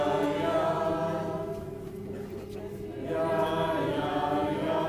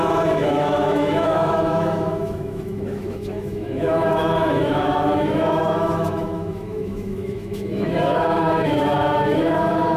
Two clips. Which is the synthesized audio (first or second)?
second